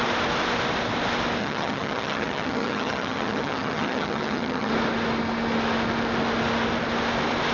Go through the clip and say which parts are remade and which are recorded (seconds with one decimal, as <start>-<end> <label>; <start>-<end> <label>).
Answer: 0.0-1.4 recorded; 1.4-4.7 remade; 4.7-7.5 recorded